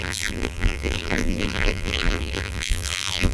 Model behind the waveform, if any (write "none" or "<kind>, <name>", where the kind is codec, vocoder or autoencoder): vocoder, BigVGAN v2